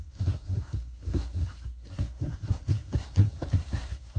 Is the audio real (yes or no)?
no